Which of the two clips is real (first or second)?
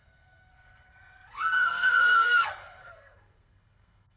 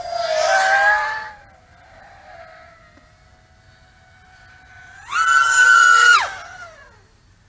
second